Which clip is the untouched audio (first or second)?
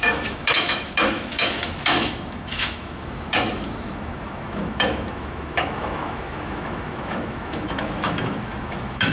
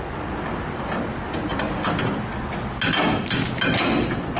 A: second